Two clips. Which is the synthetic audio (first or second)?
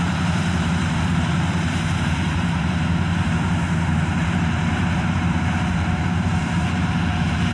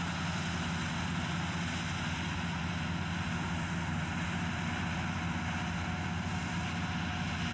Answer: first